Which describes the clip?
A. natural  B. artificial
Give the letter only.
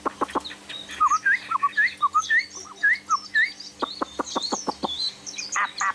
A